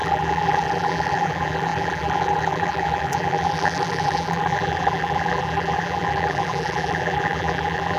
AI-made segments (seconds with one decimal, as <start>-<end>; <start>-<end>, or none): 0.0-8.0